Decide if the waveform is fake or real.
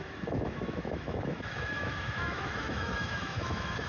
fake